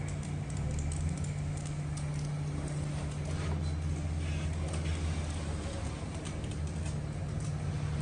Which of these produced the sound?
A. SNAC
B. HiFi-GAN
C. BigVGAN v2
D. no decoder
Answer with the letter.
D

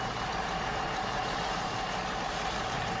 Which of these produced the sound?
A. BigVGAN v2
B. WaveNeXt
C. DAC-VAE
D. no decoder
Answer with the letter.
A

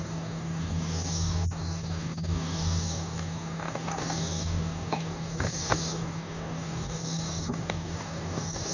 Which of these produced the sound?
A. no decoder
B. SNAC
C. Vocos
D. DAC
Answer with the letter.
D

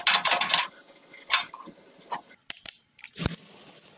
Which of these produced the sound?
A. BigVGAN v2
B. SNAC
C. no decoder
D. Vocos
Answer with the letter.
C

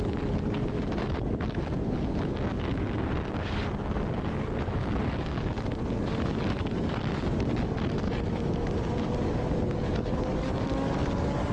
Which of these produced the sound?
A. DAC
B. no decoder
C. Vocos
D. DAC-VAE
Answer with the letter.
A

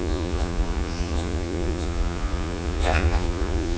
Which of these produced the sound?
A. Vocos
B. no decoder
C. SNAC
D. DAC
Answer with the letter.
A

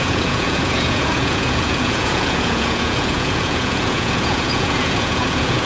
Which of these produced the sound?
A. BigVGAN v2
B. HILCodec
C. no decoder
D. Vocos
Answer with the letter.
D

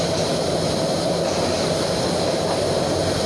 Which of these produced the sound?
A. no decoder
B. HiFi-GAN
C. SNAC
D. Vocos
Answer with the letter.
A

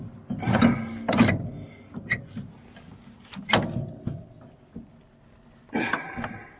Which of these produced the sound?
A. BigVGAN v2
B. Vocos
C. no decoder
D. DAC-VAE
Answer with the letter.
C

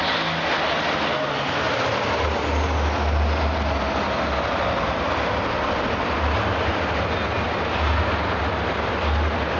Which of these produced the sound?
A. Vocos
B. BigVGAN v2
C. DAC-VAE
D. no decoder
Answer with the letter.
D